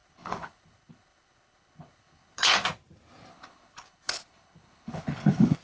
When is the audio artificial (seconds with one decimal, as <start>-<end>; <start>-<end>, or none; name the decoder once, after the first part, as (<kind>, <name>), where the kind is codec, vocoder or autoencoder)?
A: 0.0-2.6 (codec, HILCodec); 3.3-5.6